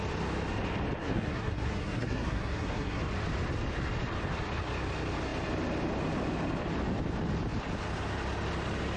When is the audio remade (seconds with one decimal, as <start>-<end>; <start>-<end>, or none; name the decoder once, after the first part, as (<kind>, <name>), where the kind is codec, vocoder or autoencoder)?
1.0-3.0 (codec, SNAC)